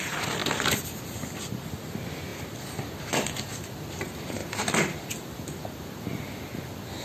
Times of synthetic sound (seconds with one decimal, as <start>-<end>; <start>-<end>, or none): none